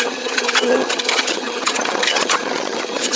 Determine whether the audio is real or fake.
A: fake